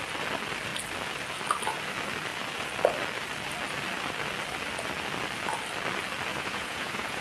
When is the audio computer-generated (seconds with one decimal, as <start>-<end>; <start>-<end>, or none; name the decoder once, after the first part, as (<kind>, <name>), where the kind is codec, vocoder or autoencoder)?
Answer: 6.3-7.2 (vocoder, Vocos)